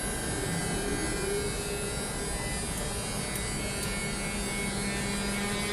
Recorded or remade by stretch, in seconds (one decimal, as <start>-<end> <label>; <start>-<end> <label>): 0.0-5.7 recorded